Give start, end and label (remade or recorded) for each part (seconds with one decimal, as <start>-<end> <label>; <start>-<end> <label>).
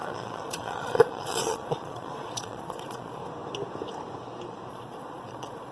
0.0-3.2 remade; 3.2-4.7 recorded; 4.7-5.7 remade